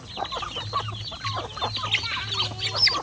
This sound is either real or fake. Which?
real